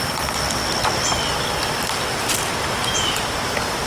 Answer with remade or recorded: remade